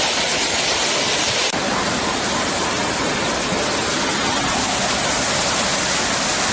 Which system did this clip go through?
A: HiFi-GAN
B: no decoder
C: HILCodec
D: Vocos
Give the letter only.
B